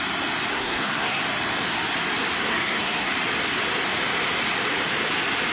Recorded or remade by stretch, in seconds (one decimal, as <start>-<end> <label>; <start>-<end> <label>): 0.0-0.5 recorded; 0.5-1.2 remade; 1.2-2.5 recorded; 2.5-3.1 remade; 3.1-5.5 recorded

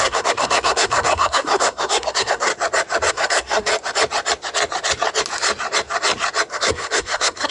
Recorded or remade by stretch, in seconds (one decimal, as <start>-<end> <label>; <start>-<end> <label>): 0.0-2.5 remade; 2.5-3.1 recorded; 3.1-3.7 remade; 3.7-6.5 recorded; 6.5-7.5 remade

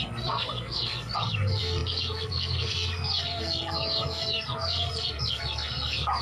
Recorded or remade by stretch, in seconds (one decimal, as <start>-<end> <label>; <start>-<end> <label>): 0.0-6.2 remade